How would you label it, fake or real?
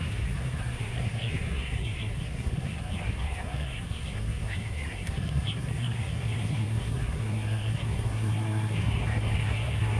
fake